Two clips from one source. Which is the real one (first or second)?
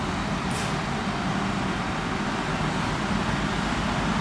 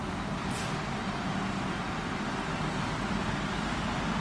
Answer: second